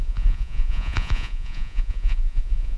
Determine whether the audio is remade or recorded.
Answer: remade